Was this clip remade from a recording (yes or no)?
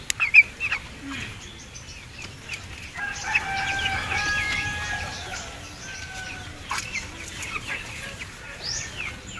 no